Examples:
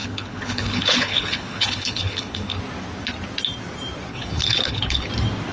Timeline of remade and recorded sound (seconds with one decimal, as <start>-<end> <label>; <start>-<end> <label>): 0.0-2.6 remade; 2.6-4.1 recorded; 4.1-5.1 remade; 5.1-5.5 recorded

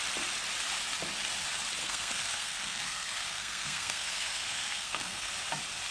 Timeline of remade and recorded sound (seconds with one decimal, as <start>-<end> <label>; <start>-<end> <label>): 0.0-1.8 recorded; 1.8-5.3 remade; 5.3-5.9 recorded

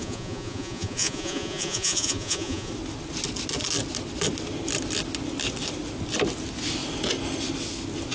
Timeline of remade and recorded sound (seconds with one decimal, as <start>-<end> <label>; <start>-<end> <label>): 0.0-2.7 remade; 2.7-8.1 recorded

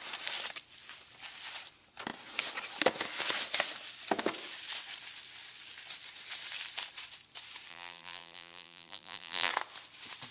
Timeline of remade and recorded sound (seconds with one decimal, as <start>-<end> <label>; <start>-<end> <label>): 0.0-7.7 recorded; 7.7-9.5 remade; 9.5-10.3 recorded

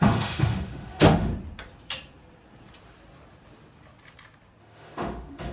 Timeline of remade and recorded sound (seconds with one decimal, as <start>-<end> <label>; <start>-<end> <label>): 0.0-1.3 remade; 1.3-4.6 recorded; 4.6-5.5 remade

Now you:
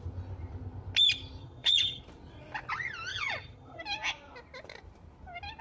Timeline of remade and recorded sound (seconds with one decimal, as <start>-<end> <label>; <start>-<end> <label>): 0.0-1.4 recorded; 1.4-2.0 remade; 2.0-3.1 recorded; 3.1-3.8 remade; 3.8-5.6 recorded